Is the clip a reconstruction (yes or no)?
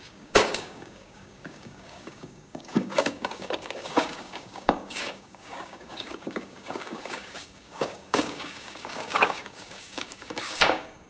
yes